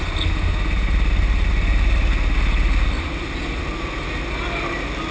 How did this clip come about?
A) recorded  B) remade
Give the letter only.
A